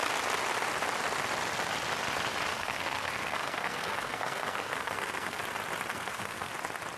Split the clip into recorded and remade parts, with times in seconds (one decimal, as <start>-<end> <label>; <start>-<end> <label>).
0.0-2.5 recorded; 2.5-5.4 remade; 5.4-5.9 recorded; 5.9-6.5 remade; 6.5-7.0 recorded